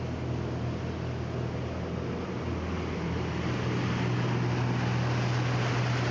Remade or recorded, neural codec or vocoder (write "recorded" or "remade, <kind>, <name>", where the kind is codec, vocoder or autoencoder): recorded